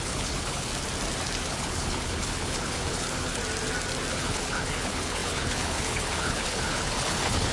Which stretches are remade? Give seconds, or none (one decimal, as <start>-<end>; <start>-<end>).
0.0-0.7; 1.5-3.4; 4.1-7.5